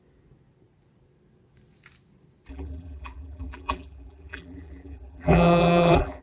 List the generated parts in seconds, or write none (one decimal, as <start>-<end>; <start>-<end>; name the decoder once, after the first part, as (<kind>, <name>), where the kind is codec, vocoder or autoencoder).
2.5-6.2 (vocoder, BigVGAN v2)

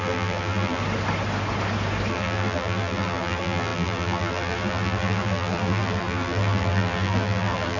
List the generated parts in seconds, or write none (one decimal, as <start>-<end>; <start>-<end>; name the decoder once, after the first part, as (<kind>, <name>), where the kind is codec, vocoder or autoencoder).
0.0-0.8 (vocoder, BigVGAN v2); 2.1-7.8

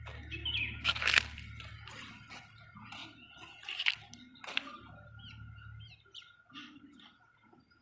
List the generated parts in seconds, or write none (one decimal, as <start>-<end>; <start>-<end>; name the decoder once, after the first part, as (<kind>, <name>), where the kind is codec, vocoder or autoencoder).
6.6-7.2 (vocoder, BigVGAN v2)

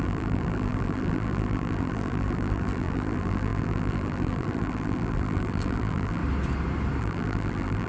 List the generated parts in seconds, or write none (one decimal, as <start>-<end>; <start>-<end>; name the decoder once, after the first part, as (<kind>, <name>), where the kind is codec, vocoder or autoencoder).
0.0-6.2 (vocoder, BigVGAN v2); 7.0-7.9

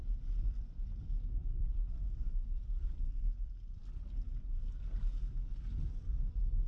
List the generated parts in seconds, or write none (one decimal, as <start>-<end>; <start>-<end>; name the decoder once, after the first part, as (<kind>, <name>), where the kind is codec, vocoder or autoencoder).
0.0-3.8 (vocoder, BigVGAN v2); 4.7-6.7

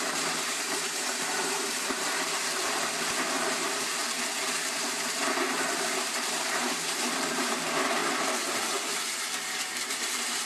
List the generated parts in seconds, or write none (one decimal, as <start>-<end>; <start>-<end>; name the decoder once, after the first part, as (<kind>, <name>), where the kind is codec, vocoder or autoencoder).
0.0-4.0 (vocoder, BigVGAN v2); 4.7-8.0; 8.9-10.5